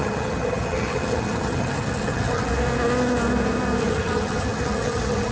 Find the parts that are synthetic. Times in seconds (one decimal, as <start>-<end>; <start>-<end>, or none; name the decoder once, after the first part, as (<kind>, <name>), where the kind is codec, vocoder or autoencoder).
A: 0.0-2.5 (vocoder, HiFi-GAN); 3.8-5.3